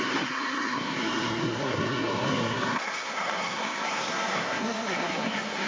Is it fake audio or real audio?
fake